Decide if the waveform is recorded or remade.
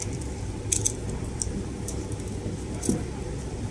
recorded